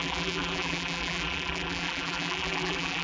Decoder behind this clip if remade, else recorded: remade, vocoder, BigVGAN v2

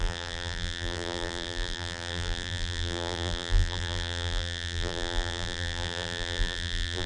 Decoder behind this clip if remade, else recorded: remade, vocoder, BigVGAN v2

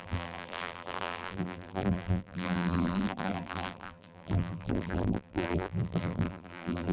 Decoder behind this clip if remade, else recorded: remade, vocoder, BigVGAN v2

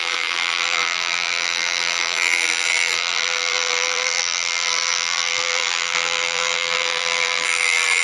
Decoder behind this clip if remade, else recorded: remade, vocoder, BigVGAN v2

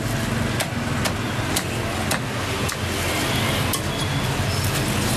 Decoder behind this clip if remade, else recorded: recorded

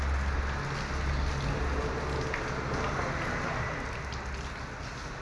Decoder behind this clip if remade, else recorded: recorded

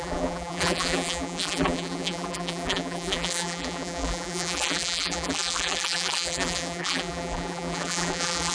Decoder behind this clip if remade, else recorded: remade, vocoder, BigVGAN v2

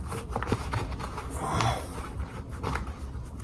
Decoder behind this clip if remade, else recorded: remade, vocoder, BigVGAN v2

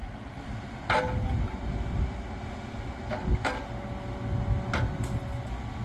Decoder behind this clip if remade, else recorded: recorded